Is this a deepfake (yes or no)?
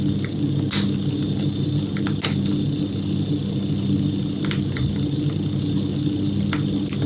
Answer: no